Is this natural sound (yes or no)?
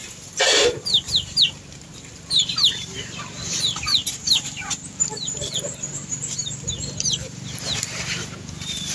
no